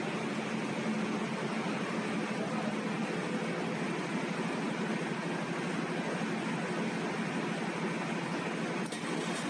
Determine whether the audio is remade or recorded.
recorded